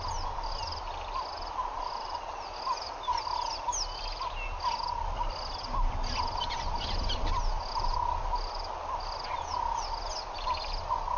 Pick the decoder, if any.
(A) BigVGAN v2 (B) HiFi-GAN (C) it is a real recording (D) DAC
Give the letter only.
C